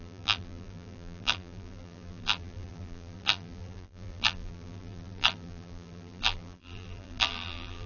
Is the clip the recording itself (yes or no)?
no